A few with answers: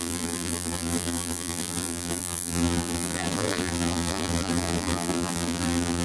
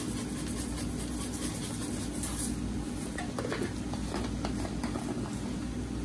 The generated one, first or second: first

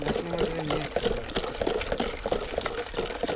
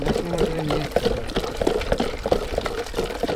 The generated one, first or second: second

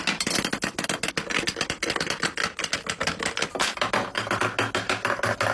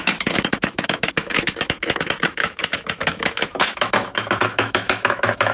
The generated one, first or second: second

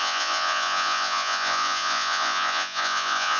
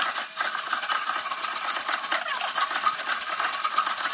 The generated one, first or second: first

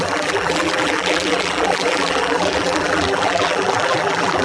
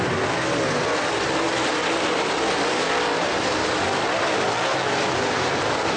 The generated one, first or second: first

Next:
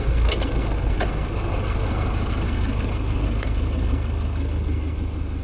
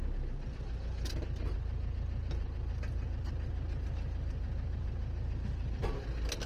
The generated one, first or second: first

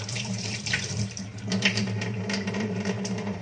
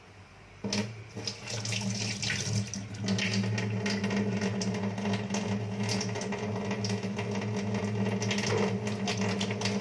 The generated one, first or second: first